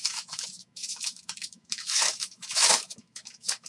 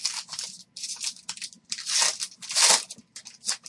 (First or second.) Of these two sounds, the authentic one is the second